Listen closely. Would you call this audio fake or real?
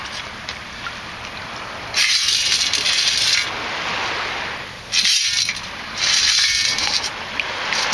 real